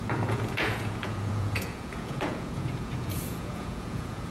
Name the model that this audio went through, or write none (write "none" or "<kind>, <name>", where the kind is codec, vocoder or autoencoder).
vocoder, Vocos